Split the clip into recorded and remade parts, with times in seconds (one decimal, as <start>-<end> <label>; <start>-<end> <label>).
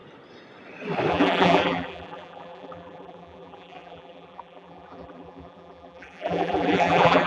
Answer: 0.0-1.1 recorded; 1.1-7.3 remade